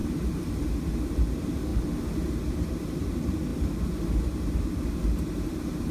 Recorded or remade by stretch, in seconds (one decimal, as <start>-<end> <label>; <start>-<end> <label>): 0.0-1.7 remade; 1.7-2.4 recorded; 2.4-5.9 remade